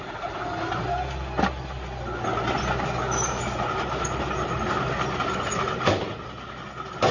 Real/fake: real